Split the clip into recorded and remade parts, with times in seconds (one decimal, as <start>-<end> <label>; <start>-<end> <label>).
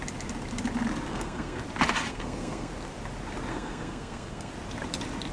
0.0-1.1 recorded; 1.1-1.6 remade; 1.6-2.1 recorded; 2.1-2.7 remade; 2.7-3.5 recorded; 3.5-4.5 remade; 4.5-5.3 recorded